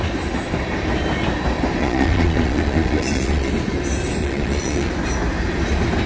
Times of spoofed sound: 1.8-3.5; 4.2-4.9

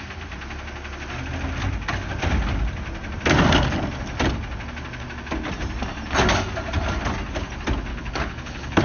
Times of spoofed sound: 7.9-8.8

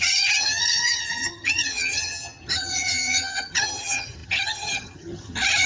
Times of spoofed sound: 0.0-5.7